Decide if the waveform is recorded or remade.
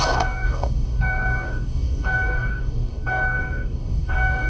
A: remade